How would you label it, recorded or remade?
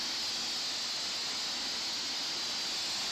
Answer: recorded